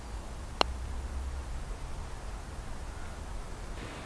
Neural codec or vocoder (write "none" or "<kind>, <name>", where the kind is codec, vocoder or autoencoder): none